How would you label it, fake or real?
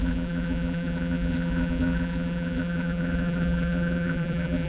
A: fake